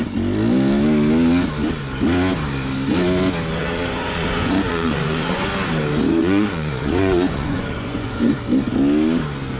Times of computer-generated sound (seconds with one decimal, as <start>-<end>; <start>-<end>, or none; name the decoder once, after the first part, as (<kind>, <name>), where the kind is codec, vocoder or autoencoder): 3.6-5.5 (vocoder, Vocos); 6.2-8.3